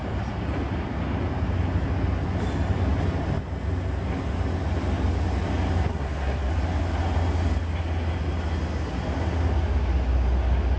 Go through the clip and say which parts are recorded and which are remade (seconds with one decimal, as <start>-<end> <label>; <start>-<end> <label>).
0.0-5.9 recorded; 5.9-6.5 remade; 6.5-10.8 recorded